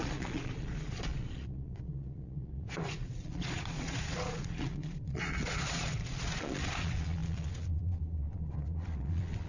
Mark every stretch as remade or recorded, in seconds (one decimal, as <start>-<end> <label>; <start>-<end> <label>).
0.0-9.5 remade